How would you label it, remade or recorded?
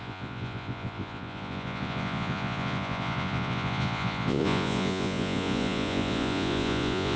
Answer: remade